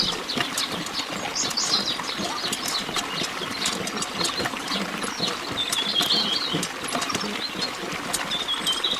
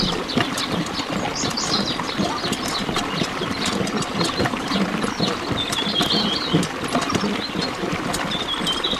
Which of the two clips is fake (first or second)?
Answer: second